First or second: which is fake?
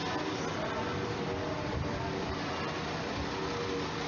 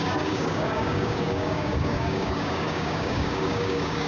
second